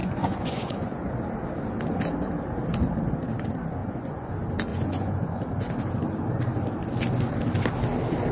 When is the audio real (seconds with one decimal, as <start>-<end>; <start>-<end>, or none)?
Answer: 1.1-3.8; 4.3-4.7; 5.4-8.3